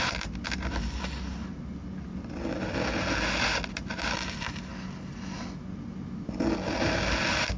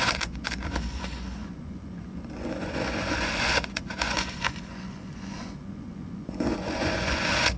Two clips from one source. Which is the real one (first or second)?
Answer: first